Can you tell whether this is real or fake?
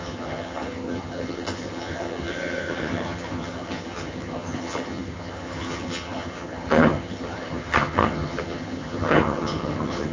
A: fake